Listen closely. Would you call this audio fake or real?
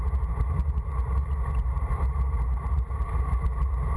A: fake